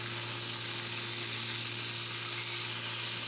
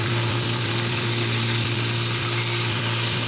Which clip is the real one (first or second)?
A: first